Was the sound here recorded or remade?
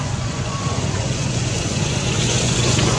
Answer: remade